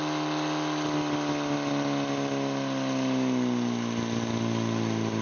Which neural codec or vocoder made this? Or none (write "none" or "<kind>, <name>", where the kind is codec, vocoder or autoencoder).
none